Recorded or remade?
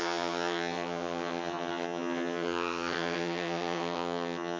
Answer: remade